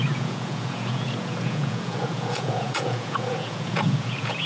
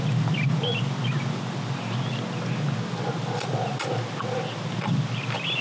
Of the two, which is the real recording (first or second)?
second